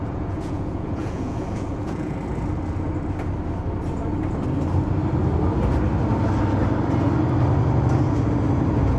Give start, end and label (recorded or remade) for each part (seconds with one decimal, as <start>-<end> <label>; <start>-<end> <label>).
0.0-2.2 remade; 2.2-9.0 recorded